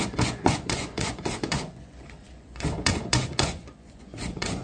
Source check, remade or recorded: remade